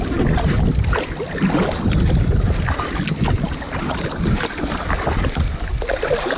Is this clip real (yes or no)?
yes